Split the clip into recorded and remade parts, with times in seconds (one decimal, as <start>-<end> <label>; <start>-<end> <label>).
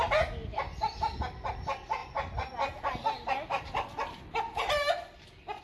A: 0.0-5.6 recorded